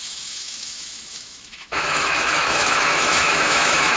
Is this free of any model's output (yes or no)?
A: no